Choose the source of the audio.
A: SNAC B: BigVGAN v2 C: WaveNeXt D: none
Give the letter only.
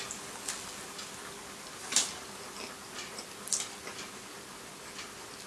D